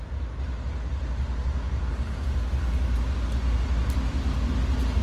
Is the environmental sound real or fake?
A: real